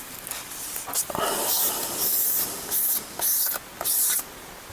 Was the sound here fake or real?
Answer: real